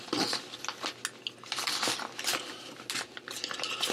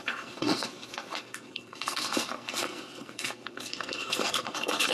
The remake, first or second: second